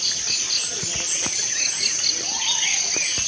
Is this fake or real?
real